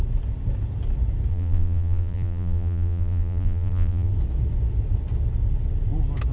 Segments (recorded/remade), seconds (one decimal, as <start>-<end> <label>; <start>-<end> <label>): 0.0-1.3 recorded; 1.3-4.1 remade; 4.1-6.3 recorded

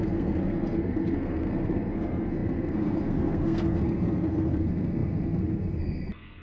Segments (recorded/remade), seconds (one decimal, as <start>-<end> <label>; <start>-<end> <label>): 0.0-6.4 remade

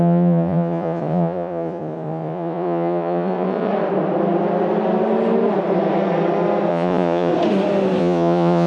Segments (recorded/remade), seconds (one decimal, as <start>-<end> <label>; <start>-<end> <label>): 0.0-3.7 remade; 3.7-6.7 recorded; 6.7-7.3 remade; 7.3-8.0 recorded; 8.0-8.7 remade